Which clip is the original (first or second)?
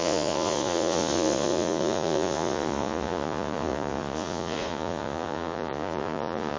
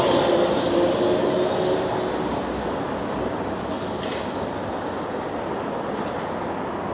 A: second